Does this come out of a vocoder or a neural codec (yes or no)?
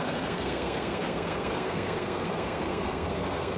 yes